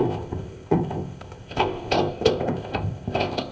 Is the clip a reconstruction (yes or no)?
yes